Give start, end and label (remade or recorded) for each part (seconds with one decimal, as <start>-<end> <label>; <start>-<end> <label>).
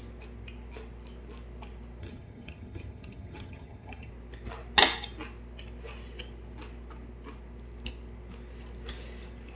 0.0-2.0 recorded; 2.0-4.1 remade; 4.1-9.6 recorded